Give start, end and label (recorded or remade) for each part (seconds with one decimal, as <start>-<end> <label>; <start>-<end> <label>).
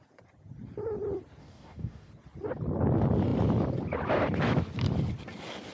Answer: 0.0-1.4 recorded; 1.4-2.1 remade; 2.1-5.7 recorded